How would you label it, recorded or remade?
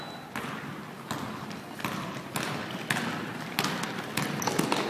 recorded